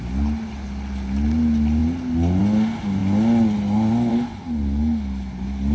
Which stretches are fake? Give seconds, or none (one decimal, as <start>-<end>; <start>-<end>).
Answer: none